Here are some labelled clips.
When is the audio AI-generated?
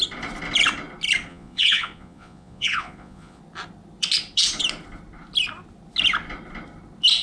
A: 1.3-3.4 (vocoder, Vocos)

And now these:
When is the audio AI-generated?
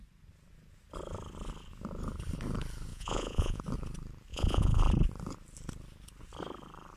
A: 2.9-3.6 (vocoder, Vocos); 4.3-4.8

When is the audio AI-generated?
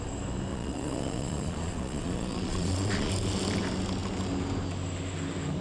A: 0.5-3.1 (vocoder, Vocos)